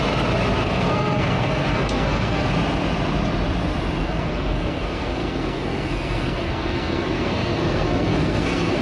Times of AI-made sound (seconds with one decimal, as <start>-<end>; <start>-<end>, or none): 0.6-2.5; 4.0-8.8